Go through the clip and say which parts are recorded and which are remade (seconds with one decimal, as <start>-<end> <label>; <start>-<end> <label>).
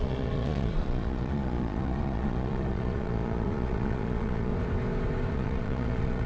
0.0-4.5 remade; 4.5-5.3 recorded; 5.3-6.3 remade